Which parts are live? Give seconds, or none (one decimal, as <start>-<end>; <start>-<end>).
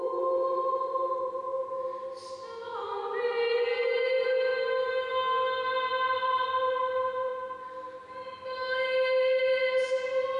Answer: 0.0-10.4